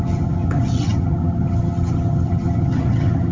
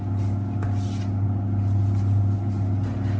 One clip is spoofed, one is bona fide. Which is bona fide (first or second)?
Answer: second